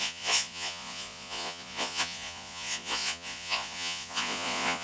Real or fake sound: fake